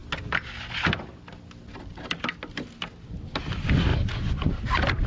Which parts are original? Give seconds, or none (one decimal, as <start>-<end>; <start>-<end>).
0.0-3.9; 4.5-5.1